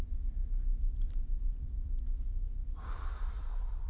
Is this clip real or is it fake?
fake